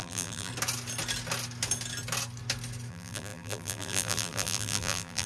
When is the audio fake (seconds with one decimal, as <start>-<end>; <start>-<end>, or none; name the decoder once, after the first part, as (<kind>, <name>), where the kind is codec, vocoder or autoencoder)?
0.0-0.5 (vocoder, BigVGAN v2); 2.9-5.3